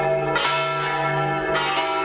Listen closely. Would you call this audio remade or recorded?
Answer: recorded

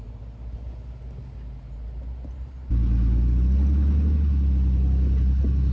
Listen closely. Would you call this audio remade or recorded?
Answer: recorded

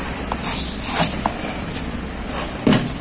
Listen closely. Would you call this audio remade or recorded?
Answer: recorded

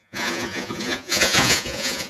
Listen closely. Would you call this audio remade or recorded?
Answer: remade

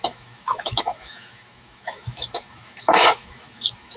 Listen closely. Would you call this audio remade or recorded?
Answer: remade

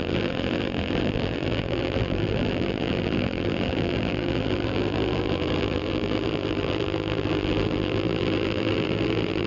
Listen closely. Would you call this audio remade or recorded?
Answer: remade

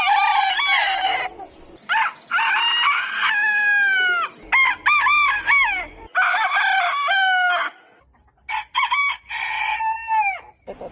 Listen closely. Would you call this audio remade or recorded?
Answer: recorded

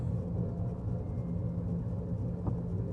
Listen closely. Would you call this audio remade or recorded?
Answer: recorded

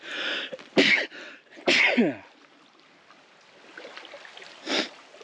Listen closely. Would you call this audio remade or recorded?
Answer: recorded